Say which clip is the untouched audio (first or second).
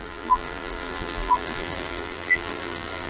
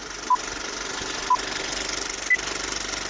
second